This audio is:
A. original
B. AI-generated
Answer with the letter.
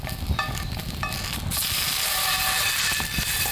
A